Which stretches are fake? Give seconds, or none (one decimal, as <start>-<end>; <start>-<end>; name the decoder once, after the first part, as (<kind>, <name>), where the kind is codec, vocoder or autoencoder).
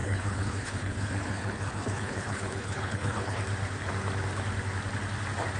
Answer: 0.0-3.4 (codec, HILCodec)